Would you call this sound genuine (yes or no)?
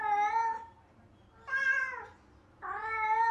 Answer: yes